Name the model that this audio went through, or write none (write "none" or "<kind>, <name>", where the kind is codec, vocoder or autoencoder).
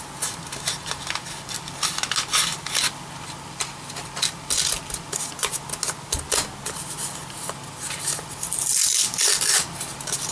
none